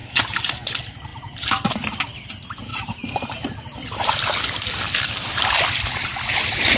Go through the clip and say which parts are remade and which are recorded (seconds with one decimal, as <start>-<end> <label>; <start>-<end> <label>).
0.0-0.5 remade; 0.5-1.1 recorded; 1.1-2.0 remade; 2.0-2.7 recorded; 2.7-4.1 remade; 4.1-6.8 recorded